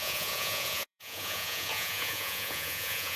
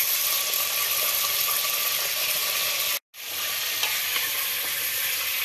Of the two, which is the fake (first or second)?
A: first